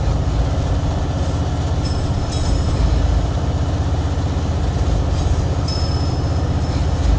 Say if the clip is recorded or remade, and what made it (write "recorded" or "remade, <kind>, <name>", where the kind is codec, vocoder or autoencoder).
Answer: recorded